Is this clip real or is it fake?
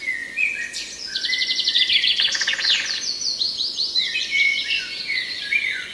fake